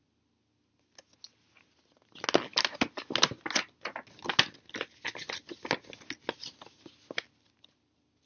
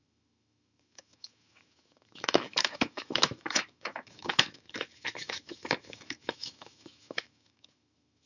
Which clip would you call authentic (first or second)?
first